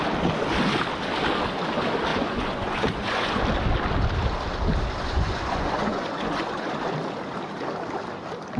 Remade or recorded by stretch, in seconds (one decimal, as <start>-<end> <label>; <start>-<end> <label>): 0.0-2.1 recorded; 2.1-3.4 remade; 3.4-5.0 recorded; 5.0-6.7 remade; 6.7-8.6 recorded